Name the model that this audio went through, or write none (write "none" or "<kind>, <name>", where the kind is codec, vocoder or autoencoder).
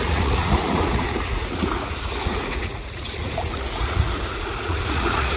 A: vocoder, Vocos